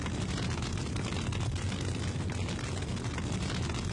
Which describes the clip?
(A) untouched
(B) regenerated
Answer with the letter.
A